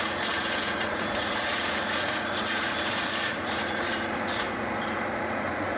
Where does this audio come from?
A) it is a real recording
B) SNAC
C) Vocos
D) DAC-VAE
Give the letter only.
C